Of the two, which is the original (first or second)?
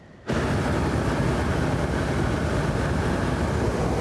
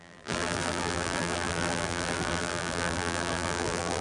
first